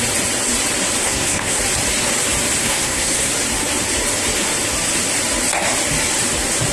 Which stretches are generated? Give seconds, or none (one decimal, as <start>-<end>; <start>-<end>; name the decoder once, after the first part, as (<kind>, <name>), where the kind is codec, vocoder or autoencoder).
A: 1.0-1.6 (codec, SNAC); 2.6-3.3